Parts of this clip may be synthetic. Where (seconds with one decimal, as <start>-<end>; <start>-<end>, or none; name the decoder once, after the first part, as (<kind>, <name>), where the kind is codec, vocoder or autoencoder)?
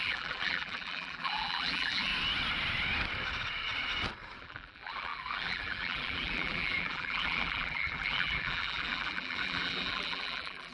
0.0-2.1 (vocoder, BigVGAN v2); 4.4-10.7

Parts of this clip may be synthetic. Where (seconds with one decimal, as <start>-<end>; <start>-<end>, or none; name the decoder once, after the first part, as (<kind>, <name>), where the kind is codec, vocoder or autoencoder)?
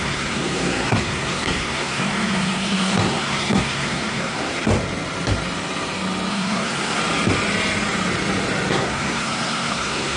0.0-4.7 (codec, SNAC); 6.3-7.0; 8.7-10.2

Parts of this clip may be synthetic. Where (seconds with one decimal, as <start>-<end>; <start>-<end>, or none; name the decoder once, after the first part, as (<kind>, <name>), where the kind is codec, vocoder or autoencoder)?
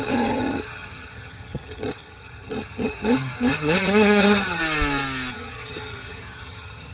0.0-4.6 (vocoder, HiFi-GAN); 5.3-6.9